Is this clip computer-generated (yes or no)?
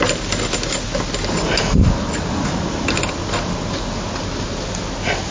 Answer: no